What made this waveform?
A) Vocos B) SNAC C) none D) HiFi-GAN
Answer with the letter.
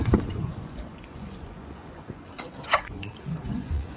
A